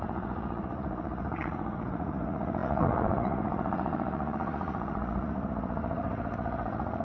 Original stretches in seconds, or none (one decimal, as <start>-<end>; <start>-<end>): none